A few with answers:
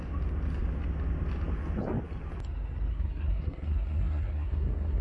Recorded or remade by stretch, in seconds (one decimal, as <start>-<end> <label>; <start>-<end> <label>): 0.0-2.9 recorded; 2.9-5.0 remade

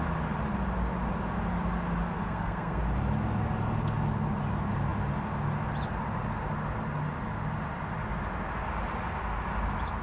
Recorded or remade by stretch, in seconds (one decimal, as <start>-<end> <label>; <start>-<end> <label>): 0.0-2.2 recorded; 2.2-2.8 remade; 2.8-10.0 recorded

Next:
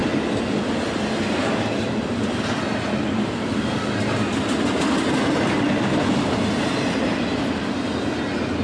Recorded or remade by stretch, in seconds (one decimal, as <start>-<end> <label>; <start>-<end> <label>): 0.0-8.6 recorded

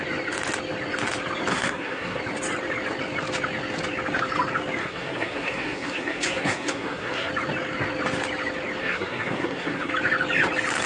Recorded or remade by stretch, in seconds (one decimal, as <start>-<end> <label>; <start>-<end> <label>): 0.0-1.5 recorded; 1.5-2.2 remade; 2.2-4.8 recorded; 4.8-7.3 remade; 7.3-8.8 recorded; 8.8-9.9 remade; 9.9-10.9 recorded